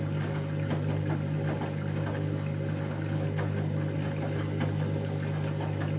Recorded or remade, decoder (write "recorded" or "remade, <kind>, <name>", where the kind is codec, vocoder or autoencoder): recorded